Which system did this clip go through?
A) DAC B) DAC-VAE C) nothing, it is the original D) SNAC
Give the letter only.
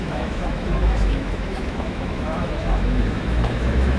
B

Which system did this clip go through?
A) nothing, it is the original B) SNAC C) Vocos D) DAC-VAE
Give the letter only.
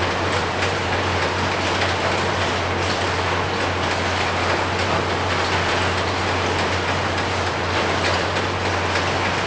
A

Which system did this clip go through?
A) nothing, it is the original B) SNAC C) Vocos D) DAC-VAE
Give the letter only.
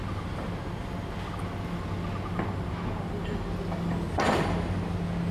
A